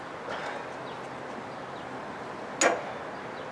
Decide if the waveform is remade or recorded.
recorded